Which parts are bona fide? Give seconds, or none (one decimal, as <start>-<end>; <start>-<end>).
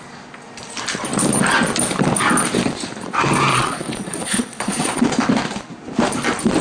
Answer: 0.0-3.5; 5.0-6.6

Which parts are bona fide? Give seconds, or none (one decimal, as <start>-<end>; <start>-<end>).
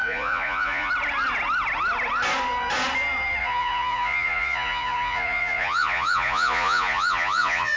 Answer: 0.9-3.4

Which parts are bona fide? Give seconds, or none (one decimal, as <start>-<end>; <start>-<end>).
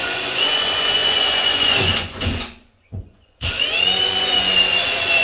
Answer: none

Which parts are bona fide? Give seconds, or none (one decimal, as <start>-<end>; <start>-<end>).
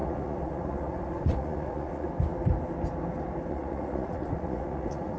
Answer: 2.1-3.5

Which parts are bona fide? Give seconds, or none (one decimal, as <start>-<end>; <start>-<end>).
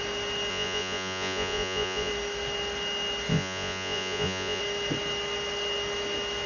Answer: 0.0-0.5; 2.1-3.3; 4.6-6.5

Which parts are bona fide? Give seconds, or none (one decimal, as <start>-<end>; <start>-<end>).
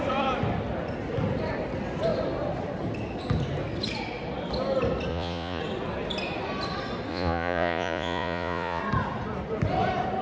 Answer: 0.0-5.1; 5.6-7.1; 8.8-10.2